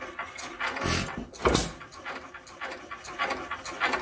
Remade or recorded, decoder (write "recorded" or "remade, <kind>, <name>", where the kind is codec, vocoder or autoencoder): recorded